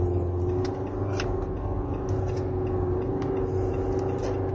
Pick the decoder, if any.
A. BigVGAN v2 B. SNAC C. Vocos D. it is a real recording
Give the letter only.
D